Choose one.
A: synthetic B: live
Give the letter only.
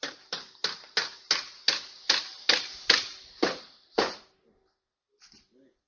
B